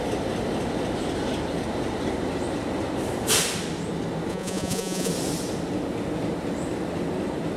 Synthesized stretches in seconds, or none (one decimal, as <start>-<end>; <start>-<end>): 4.3-5.1